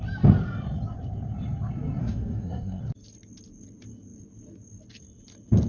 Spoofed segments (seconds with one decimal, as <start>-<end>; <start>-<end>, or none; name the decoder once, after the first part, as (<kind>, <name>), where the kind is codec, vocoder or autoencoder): 2.0-2.8 (codec, SNAC)